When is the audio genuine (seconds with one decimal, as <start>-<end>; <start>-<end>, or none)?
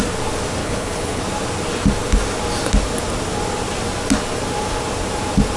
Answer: 0.0-0.6; 1.2-5.6